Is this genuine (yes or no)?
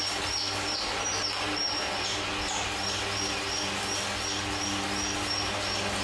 yes